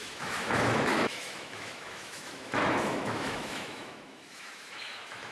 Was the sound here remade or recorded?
remade